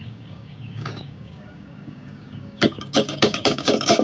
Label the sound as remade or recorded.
remade